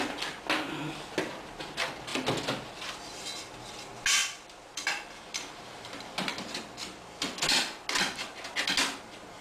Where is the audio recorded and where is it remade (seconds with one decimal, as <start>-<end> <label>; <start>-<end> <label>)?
0.0-4.2 recorded; 4.2-5.6 remade; 5.6-6.3 recorded; 6.3-7.2 remade; 7.2-9.4 recorded